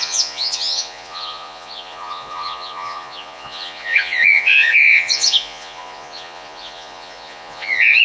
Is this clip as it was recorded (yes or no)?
no